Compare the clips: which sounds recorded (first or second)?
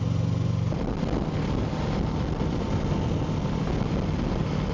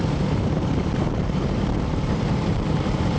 first